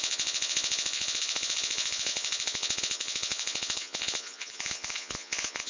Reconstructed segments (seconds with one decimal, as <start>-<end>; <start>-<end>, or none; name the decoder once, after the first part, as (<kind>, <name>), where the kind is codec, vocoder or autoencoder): 0.0-5.7 (vocoder, Vocos)